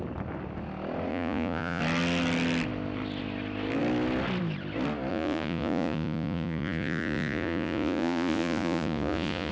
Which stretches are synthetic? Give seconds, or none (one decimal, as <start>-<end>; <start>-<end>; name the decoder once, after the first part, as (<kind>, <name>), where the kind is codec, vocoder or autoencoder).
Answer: 1.1-1.8 (vocoder, Vocos); 5.1-9.5